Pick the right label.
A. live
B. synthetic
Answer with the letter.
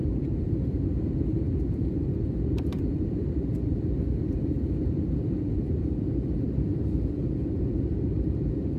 B